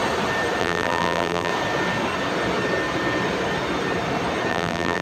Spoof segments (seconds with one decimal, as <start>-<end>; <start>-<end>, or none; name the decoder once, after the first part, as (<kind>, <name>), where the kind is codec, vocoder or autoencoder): 0.6-1.5 (vocoder, BigVGAN v2); 4.5-5.0